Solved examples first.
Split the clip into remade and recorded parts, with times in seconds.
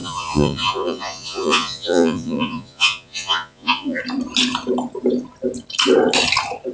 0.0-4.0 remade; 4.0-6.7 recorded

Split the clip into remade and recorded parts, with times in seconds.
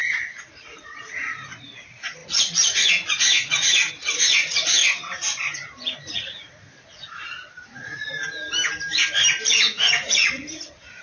0.0-4.8 remade; 4.8-6.1 recorded; 6.1-8.0 remade; 8.0-9.7 recorded; 9.7-11.0 remade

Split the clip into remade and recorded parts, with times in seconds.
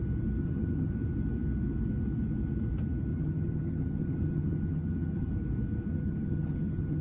0.0-0.4 recorded; 0.4-0.9 remade; 0.9-3.1 recorded; 3.1-5.3 remade; 5.3-5.9 recorded; 5.9-7.0 remade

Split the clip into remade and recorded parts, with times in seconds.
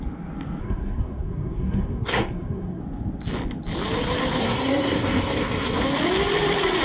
0.0-0.6 recorded; 0.6-2.8 remade; 2.8-4.4 recorded; 4.4-5.8 remade; 5.8-6.8 recorded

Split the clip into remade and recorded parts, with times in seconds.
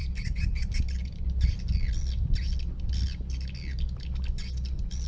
0.0-5.1 recorded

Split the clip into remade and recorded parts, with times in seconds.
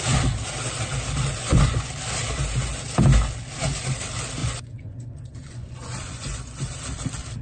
0.0-1.4 recorded; 1.4-1.9 remade; 1.9-4.4 recorded; 4.4-6.8 remade; 6.8-7.4 recorded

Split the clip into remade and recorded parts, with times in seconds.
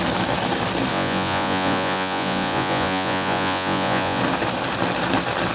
0.0-0.9 recorded; 0.9-4.2 remade; 4.2-5.5 recorded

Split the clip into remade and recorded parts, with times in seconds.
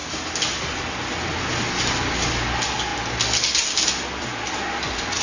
0.0-5.2 recorded